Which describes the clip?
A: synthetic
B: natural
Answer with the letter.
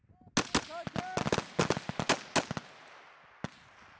B